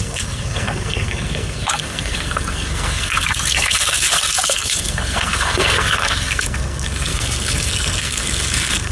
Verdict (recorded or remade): remade